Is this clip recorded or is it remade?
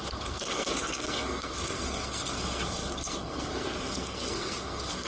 remade